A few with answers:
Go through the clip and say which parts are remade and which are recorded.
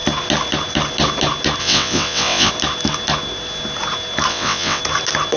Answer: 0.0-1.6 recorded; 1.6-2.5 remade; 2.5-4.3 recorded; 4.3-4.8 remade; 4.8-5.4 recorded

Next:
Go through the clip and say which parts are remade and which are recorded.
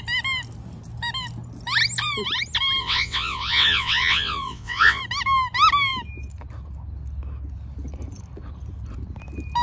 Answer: 0.0-2.8 recorded; 2.8-5.0 remade; 5.0-9.6 recorded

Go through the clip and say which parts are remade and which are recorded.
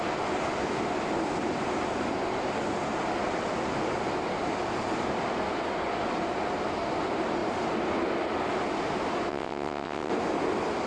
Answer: 0.0-9.3 recorded; 9.3-10.1 remade; 10.1-10.9 recorded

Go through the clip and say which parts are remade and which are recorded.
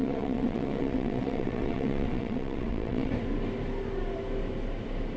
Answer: 0.0-3.1 remade; 3.1-5.2 recorded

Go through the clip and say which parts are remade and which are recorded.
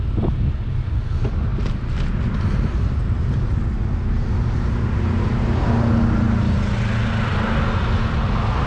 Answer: 0.0-8.7 recorded